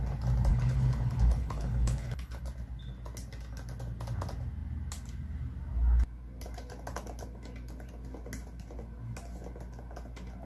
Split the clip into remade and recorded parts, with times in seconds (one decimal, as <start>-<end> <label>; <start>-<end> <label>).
0.0-0.5 recorded; 0.5-2.4 remade; 2.4-10.5 recorded